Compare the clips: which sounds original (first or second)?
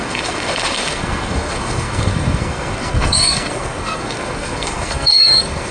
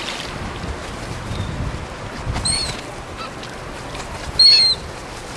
second